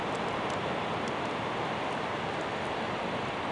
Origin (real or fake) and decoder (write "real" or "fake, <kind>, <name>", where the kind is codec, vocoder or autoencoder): real